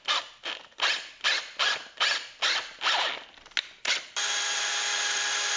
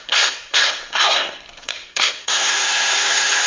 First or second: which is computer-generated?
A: second